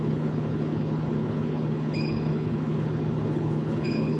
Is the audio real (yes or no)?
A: no